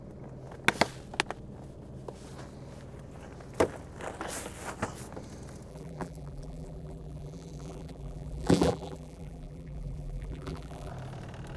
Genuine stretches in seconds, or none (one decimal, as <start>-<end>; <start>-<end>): 0.0-5.7; 10.9-11.6